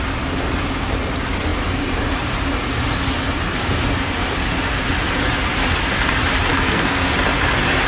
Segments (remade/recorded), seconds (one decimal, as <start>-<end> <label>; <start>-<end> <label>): 0.0-6.5 recorded; 6.5-7.1 remade; 7.1-7.9 recorded